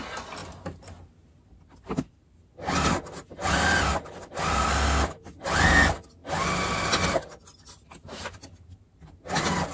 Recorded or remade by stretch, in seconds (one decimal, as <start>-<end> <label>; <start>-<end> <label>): 0.0-9.7 recorded